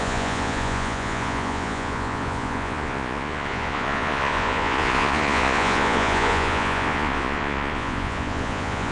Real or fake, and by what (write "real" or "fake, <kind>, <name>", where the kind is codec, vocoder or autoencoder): fake, vocoder, Vocos